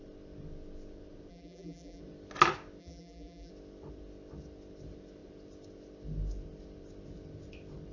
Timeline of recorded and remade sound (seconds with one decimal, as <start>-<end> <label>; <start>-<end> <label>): 0.0-1.3 recorded; 1.3-2.0 remade; 2.0-2.8 recorded; 2.8-3.5 remade; 3.5-7.9 recorded